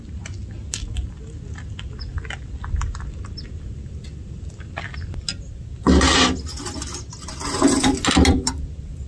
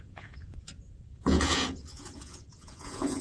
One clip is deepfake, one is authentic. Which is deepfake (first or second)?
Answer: second